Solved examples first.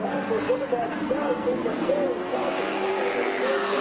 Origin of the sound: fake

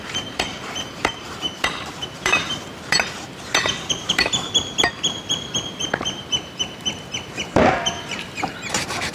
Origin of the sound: fake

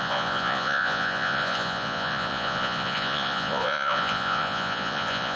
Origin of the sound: fake